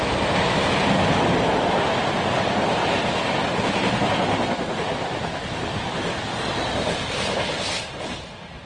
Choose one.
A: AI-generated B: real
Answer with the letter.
B